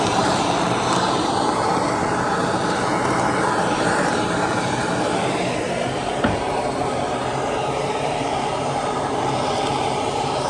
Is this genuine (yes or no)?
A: no